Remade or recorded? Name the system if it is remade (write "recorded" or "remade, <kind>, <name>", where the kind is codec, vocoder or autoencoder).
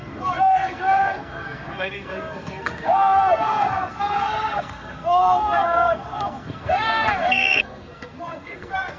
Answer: remade, codec, SNAC